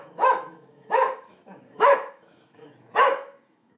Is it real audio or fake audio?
fake